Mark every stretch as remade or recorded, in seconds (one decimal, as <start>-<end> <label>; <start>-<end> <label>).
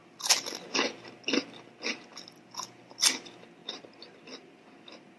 0.0-5.2 recorded